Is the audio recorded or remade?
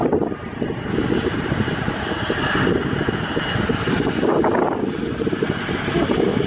recorded